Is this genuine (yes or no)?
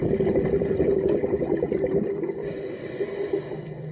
yes